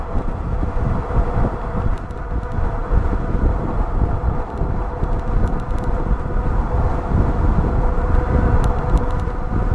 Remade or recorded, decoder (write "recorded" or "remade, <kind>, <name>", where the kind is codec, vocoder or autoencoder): recorded